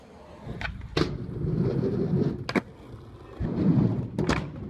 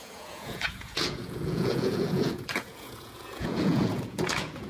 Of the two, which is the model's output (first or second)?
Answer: second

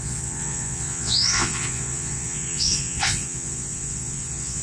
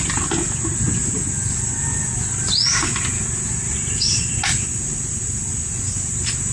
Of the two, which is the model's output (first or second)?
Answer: first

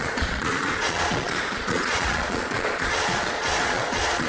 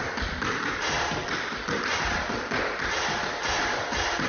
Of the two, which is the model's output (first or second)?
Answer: first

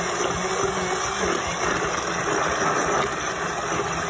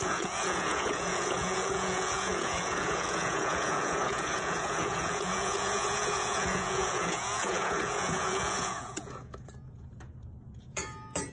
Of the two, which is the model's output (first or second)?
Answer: second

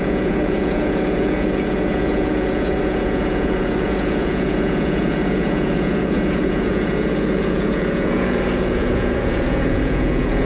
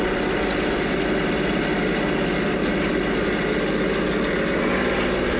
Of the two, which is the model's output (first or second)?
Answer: first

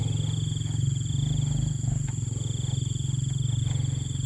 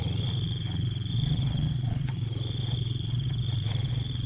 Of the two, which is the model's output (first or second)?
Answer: second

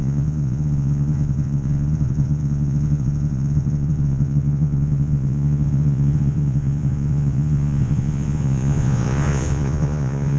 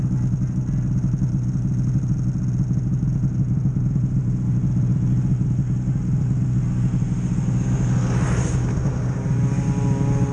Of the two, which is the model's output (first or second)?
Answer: first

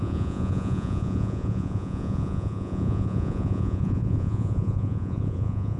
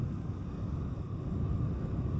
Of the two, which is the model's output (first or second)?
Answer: first